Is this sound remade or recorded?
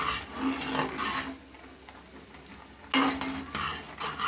recorded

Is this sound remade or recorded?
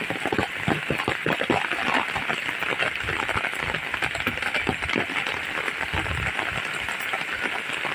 recorded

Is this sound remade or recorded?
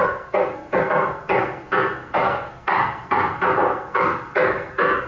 remade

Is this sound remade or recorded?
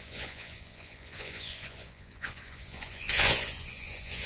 remade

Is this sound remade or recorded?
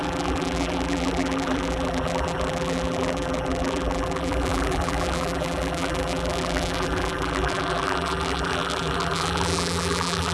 remade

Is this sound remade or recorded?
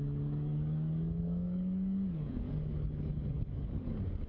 remade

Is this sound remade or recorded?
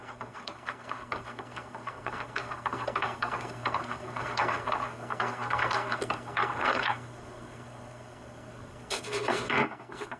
remade